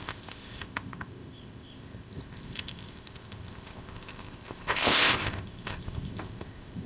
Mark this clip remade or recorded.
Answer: remade